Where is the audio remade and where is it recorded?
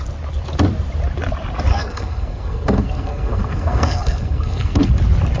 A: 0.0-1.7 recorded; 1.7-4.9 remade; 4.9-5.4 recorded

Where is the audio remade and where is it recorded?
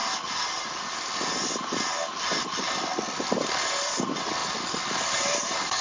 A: 0.0-5.8 recorded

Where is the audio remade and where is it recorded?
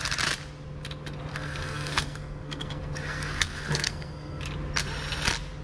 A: 0.0-1.3 recorded; 1.3-4.4 remade; 4.4-5.6 recorded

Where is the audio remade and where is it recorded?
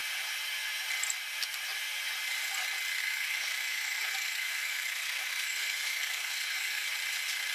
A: 0.0-3.0 recorded; 3.0-6.9 remade; 6.9-7.5 recorded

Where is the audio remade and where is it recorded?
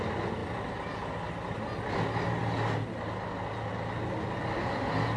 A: 0.0-5.2 recorded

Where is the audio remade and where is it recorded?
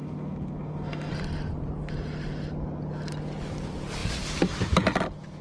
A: 0.0-1.1 remade; 1.1-5.4 recorded